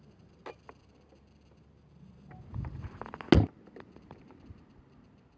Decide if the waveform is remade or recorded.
recorded